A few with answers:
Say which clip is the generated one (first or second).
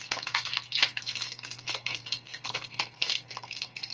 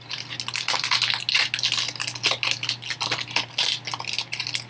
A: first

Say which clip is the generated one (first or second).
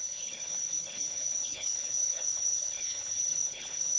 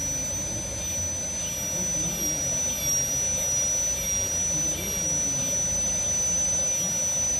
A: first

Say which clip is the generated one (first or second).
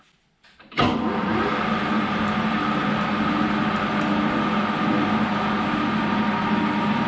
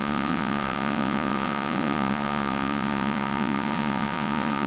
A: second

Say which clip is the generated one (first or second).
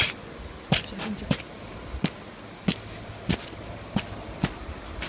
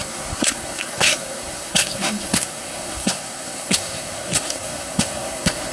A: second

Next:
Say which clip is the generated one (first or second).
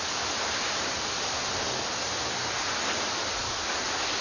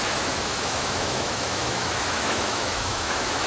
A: second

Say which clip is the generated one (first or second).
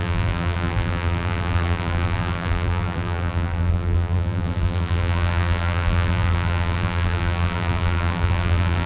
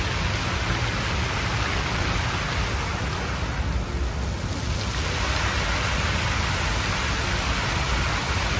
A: first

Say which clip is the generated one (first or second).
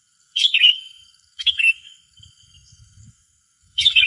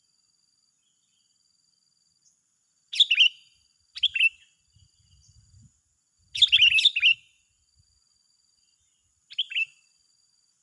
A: first